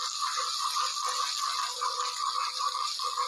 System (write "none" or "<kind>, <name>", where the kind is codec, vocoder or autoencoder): none